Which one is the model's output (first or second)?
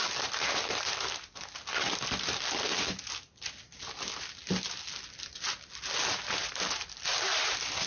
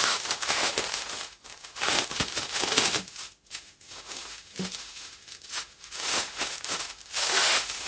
second